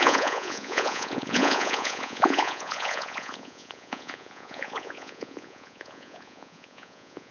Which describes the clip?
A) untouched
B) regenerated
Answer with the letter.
B